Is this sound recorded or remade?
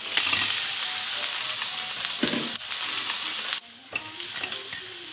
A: recorded